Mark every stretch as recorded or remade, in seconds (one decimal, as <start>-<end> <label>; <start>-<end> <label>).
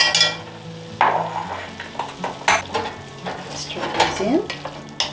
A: 0.0-5.1 recorded